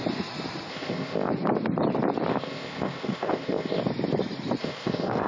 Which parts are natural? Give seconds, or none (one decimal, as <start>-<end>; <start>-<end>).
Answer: 0.0-0.7; 1.3-2.3; 3.8-4.6